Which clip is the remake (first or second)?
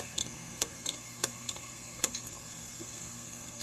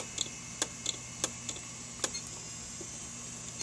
first